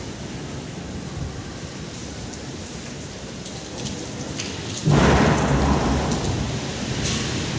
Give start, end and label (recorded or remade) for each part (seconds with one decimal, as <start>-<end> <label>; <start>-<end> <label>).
0.0-2.0 recorded; 2.0-3.4 remade; 3.4-7.6 recorded